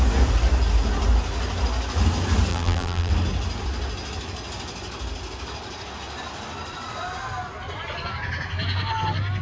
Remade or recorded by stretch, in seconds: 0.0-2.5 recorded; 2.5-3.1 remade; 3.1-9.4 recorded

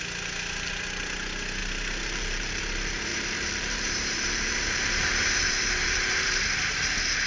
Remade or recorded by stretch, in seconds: 0.0-1.6 recorded; 1.6-2.6 remade; 2.6-3.1 recorded; 3.1-6.4 remade; 6.4-7.3 recorded

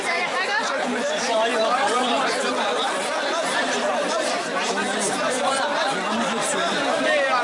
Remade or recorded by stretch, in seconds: 0.0-1.5 recorded; 1.5-2.2 remade; 2.2-7.4 recorded

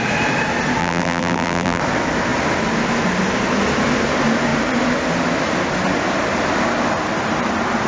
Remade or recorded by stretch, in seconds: 0.0-0.8 recorded; 0.8-1.8 remade; 1.8-7.9 recorded

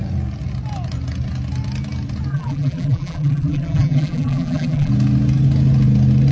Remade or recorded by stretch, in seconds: 0.0-2.3 recorded; 2.3-4.9 remade; 4.9-6.3 recorded

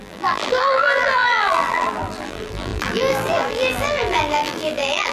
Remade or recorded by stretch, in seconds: 0.0-5.1 remade

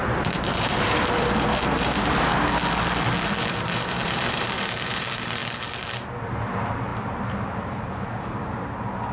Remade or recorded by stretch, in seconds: 0.0-2.3 remade; 2.3-3.4 recorded; 3.4-5.4 remade; 5.4-6.1 recorded; 6.1-9.1 remade